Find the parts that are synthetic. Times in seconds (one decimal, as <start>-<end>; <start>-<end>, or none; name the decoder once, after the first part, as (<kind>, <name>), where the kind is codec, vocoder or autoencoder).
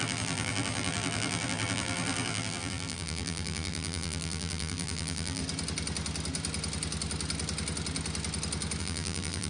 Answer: 0.0-5.4 (vocoder, BigVGAN v2); 8.8-9.5